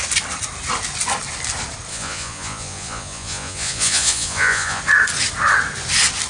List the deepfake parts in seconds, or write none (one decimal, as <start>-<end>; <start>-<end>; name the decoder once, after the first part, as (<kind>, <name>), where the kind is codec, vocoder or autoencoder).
1.9-4.8 (vocoder, Vocos)